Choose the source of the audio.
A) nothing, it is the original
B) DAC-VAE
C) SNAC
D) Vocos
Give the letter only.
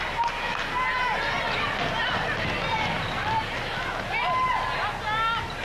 A